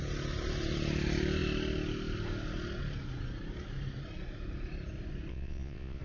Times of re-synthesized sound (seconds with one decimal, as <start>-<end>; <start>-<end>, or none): 5.3-6.0